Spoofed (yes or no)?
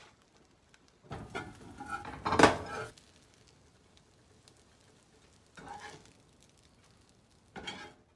no